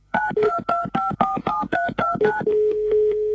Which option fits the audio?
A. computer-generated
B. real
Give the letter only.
A